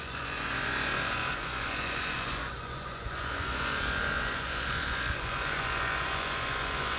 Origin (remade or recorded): remade